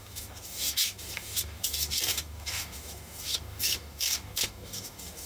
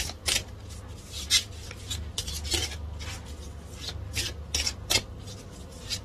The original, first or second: second